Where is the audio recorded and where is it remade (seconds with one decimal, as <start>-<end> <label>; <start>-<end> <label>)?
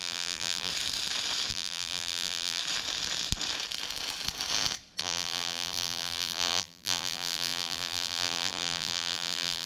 0.0-0.7 remade; 0.7-1.5 recorded; 1.5-2.6 remade; 2.6-5.0 recorded; 5.0-9.7 remade